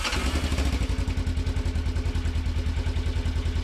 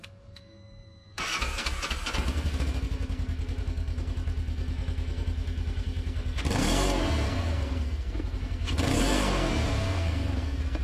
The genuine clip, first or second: first